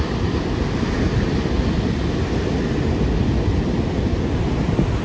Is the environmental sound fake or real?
real